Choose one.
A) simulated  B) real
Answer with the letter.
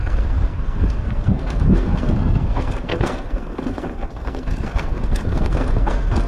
A